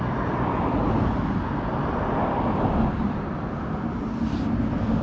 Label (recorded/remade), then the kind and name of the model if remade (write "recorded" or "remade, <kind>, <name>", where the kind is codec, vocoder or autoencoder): recorded